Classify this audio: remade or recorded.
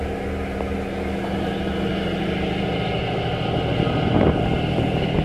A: recorded